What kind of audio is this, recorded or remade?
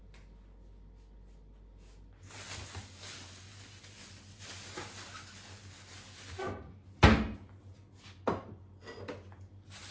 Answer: recorded